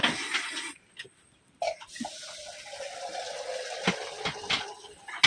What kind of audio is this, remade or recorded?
recorded